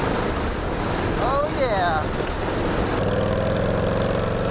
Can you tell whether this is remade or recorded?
recorded